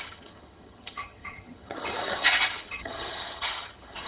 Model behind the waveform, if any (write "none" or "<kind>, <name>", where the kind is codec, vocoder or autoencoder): vocoder, HiFi-GAN